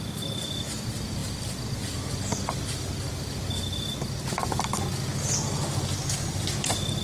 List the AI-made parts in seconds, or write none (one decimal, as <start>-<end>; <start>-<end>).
none